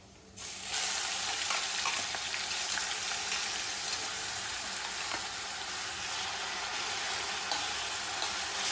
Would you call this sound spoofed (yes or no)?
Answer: no